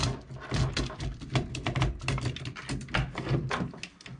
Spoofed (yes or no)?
no